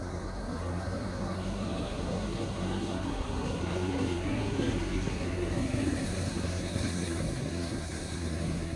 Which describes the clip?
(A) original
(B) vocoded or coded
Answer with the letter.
B